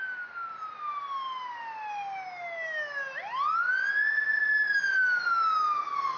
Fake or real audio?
real